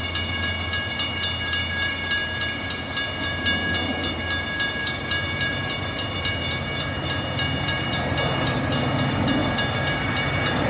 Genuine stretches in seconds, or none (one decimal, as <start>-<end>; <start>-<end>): 0.0-10.7